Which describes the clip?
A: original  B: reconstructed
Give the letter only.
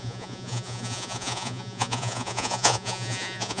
B